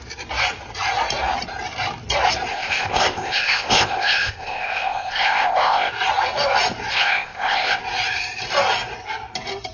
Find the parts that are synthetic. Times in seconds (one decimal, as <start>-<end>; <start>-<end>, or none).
2.5-5.9; 6.9-7.8

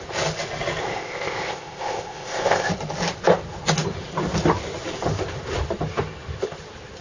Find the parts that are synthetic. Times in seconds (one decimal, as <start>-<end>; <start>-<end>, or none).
0.8-2.7